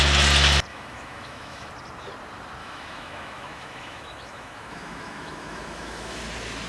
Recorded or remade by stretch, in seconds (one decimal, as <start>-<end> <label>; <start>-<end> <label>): 0.0-0.7 recorded; 0.7-1.7 remade; 1.7-2.6 recorded; 2.6-6.2 remade; 6.2-6.7 recorded